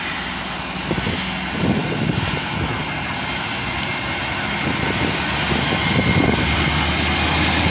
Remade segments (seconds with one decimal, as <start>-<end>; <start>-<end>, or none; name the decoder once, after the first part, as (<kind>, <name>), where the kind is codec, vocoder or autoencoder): none